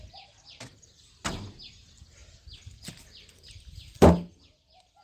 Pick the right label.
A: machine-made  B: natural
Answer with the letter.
B